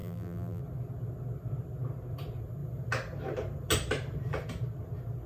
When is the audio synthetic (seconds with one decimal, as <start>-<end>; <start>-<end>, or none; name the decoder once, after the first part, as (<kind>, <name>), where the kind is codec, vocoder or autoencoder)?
0.0-0.6 (vocoder, BigVGAN v2)